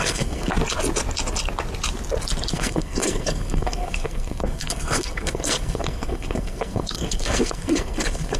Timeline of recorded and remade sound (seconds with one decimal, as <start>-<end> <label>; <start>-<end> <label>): 0.0-0.5 remade; 0.5-2.5 recorded; 2.5-8.4 remade